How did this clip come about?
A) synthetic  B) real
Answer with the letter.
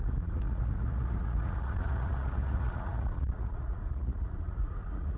A